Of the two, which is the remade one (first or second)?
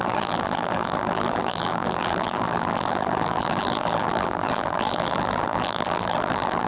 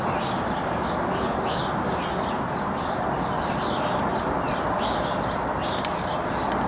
first